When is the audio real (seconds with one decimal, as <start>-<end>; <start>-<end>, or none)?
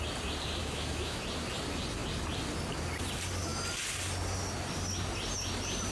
0.0-0.6; 1.2-5.9